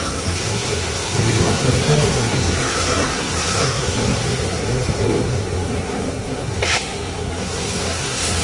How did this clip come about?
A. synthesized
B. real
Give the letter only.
A